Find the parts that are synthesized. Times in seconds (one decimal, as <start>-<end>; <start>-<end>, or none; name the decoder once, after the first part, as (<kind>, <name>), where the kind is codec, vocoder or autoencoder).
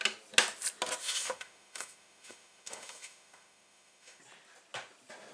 1.0-4.2 (autoencoder, DAC-VAE)